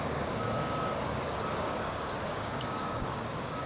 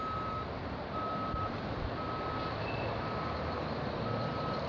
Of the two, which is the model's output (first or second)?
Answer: first